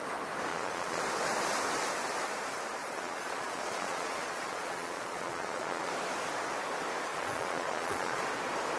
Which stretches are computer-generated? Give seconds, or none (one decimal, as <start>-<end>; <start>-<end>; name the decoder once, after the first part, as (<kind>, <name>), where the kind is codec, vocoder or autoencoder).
0.5-1.0 (vocoder, Vocos); 2.8-5.9; 7.1-8.2

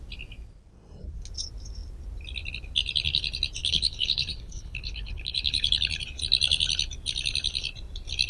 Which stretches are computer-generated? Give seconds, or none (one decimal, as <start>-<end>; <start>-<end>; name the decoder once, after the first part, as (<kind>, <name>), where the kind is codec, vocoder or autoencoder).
3.6-5.7 (codec, HILCodec)

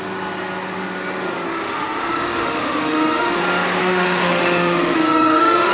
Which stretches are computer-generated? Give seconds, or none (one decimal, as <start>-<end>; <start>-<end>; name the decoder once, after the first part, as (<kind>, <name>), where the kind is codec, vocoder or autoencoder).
1.5-3.4 (autoencoder, DAC-VAE); 3.8-5.7